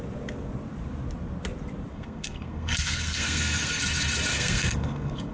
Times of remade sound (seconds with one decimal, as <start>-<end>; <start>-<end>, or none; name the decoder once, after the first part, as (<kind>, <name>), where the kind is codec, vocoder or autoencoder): 1.9-3.8 (codec, SNAC); 4.3-5.3